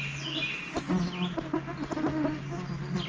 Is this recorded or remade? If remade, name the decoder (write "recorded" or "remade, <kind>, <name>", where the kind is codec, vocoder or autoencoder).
recorded